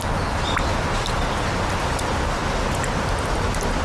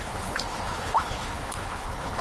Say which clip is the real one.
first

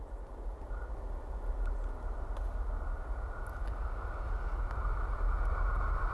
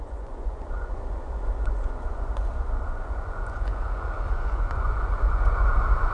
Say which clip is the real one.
first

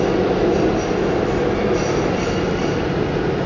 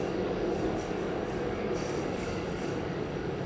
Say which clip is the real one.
first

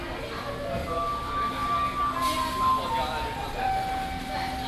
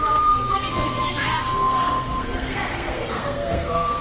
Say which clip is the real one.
first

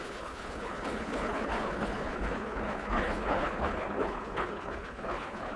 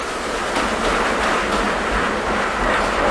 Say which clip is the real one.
second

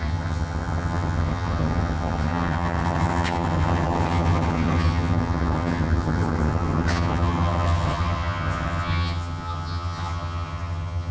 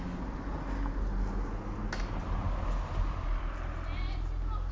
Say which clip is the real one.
second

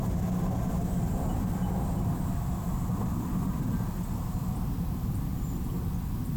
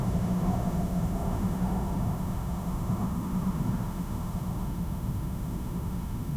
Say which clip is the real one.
first